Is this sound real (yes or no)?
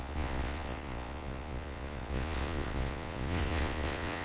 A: no